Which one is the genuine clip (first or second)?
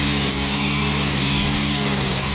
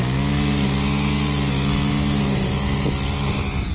second